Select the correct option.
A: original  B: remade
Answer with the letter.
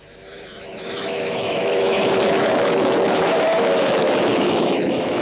B